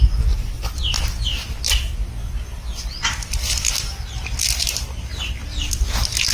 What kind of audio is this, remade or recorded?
recorded